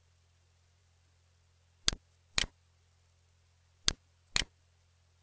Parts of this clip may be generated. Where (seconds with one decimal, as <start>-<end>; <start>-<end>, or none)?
none